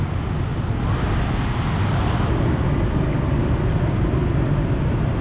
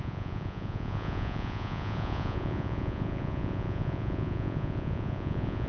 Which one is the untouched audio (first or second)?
first